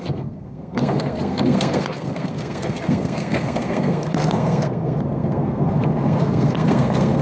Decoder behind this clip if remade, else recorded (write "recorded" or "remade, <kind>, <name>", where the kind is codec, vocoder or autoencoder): remade, codec, SNAC